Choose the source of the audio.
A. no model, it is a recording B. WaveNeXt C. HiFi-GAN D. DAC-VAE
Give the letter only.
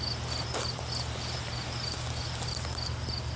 A